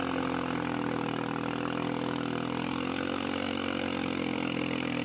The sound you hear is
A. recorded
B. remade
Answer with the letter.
A